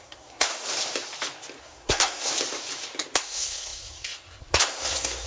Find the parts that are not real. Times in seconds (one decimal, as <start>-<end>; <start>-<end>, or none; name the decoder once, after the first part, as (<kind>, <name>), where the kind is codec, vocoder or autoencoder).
0.0-0.5 (codec, SNAC); 1.6-2.3; 3.2-5.3